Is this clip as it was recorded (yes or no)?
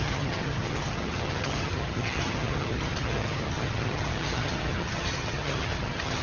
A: no